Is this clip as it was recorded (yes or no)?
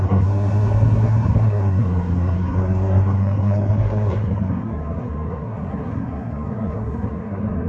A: no